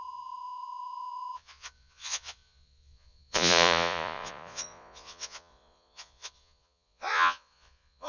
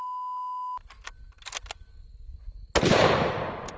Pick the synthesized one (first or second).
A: first